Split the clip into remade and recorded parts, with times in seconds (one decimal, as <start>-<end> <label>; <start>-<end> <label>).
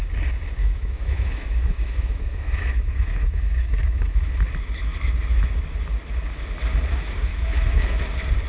0.0-0.6 recorded; 0.6-4.3 remade; 4.3-7.3 recorded; 7.3-8.0 remade; 8.0-8.5 recorded